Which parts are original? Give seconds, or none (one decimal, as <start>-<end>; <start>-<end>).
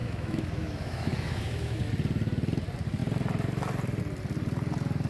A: 1.9-5.1